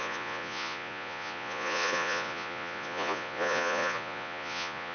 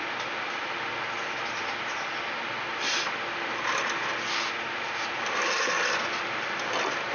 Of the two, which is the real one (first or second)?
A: second